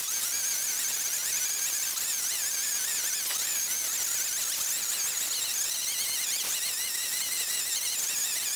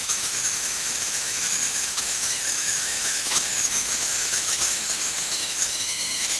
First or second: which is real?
first